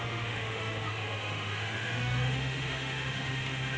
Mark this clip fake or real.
fake